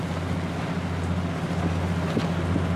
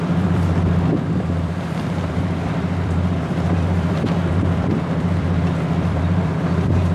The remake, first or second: second